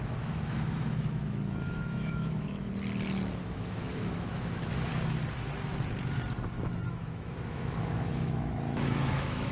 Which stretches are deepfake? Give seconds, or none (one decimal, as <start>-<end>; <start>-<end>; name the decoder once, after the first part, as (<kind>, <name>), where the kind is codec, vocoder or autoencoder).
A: 0.0-2.7 (autoencoder, DAC-VAE); 3.4-4.9; 6.9-9.5